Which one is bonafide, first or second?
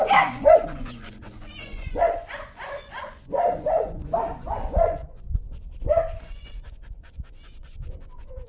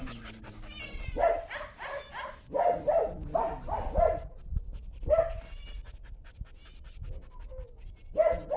second